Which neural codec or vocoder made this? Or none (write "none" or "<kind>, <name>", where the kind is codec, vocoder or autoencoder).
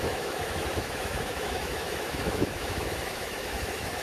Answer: autoencoder, DAC-VAE